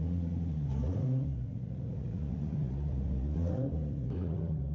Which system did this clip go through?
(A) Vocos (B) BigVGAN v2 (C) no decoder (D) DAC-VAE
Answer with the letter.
A